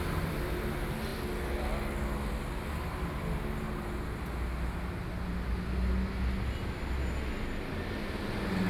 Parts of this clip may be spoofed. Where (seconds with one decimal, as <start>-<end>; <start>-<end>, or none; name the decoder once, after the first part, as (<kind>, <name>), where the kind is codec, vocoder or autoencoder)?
none